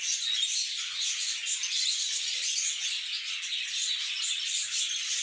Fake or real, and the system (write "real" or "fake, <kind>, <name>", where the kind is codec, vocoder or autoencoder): real